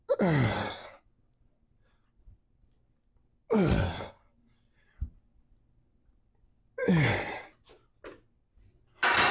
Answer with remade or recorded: recorded